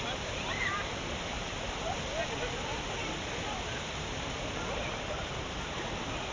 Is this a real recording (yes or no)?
yes